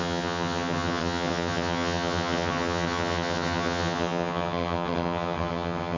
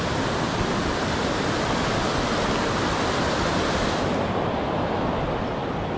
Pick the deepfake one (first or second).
first